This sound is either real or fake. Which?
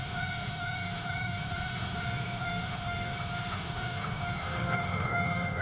fake